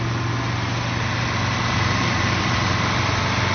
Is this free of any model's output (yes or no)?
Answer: yes